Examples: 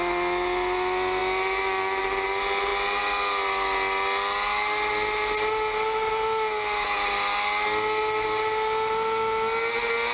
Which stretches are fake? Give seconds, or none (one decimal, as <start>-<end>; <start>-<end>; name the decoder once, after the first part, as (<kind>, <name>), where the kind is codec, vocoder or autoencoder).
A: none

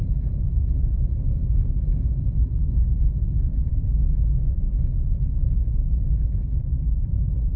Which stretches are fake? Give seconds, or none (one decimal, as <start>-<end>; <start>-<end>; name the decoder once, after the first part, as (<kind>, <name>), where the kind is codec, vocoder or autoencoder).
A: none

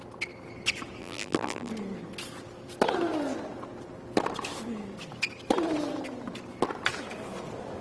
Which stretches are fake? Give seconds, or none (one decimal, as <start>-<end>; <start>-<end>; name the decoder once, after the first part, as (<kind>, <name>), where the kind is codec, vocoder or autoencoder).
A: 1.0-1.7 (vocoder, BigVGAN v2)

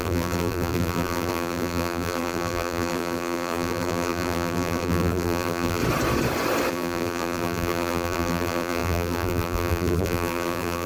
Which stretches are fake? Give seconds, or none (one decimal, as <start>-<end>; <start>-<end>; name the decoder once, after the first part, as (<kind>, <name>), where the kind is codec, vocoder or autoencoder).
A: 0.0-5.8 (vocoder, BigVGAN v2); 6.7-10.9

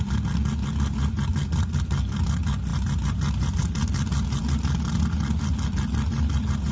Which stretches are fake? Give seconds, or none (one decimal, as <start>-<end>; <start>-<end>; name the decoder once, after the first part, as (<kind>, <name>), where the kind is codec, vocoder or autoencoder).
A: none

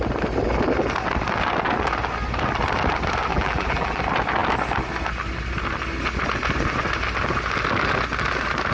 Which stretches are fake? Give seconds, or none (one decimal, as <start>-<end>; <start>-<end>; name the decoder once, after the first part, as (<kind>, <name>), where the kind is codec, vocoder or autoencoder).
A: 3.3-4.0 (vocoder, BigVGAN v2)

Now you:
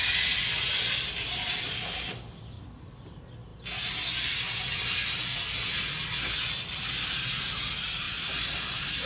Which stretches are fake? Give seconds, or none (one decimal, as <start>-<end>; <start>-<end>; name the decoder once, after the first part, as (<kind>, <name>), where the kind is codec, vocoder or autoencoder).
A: none